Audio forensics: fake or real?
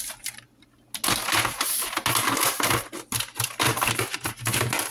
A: real